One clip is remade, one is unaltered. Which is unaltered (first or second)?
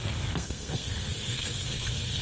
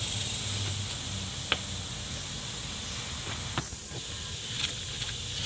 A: second